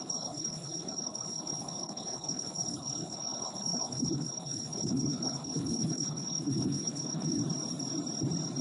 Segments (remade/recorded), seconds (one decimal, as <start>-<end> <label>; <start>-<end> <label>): 0.0-7.4 remade; 7.4-8.6 recorded